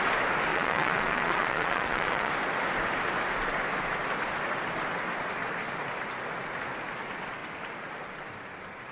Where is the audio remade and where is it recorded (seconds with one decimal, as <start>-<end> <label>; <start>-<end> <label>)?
0.0-0.5 recorded; 0.5-2.3 remade; 2.3-8.9 recorded